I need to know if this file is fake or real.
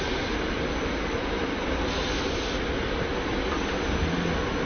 real